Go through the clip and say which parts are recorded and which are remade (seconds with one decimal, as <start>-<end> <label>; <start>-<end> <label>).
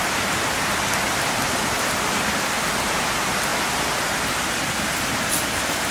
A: 0.0-5.9 recorded